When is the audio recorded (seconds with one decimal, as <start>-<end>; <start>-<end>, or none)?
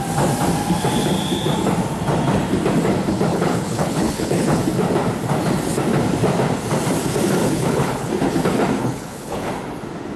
0.0-3.3; 4.6-7.4; 8.1-8.8; 9.5-10.2